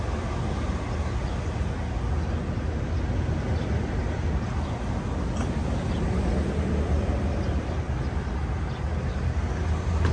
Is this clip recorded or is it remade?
recorded